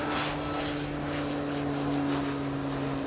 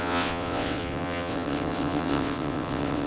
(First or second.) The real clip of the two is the first